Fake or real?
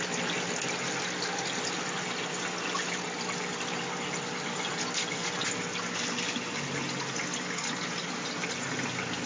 real